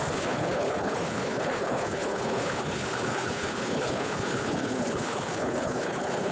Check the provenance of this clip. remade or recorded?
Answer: remade